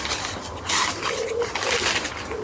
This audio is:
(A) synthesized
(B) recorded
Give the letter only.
B